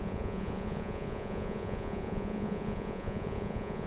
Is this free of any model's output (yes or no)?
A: no